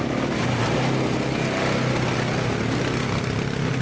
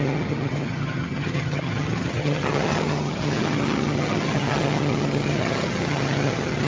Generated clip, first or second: second